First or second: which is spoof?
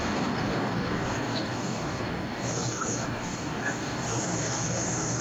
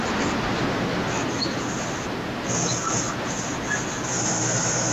first